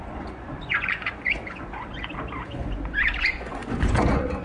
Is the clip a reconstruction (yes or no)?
yes